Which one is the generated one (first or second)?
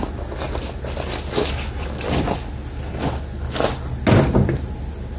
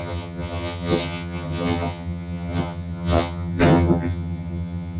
second